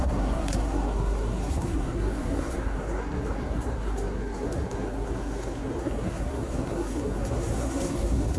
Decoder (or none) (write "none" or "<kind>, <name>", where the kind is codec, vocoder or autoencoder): codec, SNAC